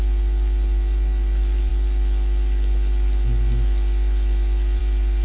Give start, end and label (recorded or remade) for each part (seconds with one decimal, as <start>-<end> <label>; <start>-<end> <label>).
0.0-5.2 recorded